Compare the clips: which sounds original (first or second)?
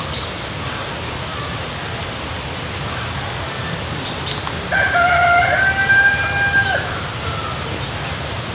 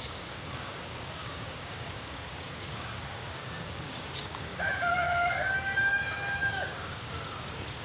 first